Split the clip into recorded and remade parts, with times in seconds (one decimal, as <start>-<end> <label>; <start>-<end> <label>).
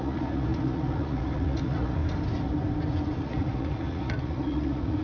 0.0-2.0 remade; 2.0-3.2 recorded; 3.2-5.0 remade